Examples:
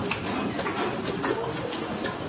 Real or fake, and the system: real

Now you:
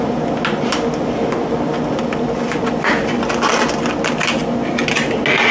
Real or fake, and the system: real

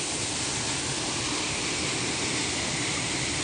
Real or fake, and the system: real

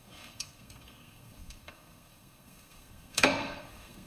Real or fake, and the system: fake, codec, SNAC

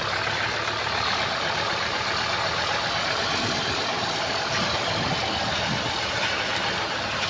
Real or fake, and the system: real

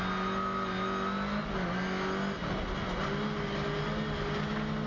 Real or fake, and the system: real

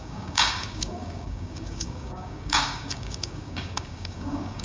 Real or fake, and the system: fake, codec, DAC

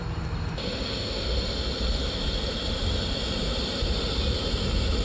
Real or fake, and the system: real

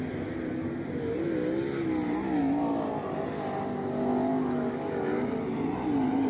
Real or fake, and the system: real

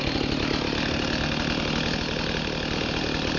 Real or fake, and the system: real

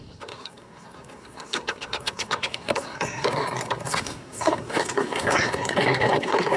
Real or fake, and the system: fake, codec, SNAC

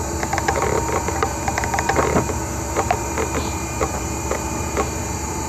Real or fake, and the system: fake, vocoder, BigVGAN v2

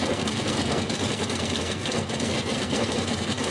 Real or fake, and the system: fake, codec, SNAC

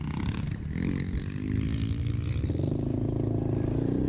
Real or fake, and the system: real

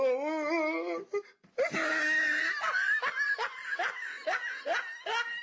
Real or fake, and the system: real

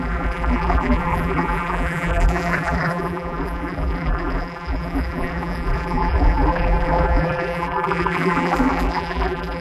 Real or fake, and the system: fake, vocoder, BigVGAN v2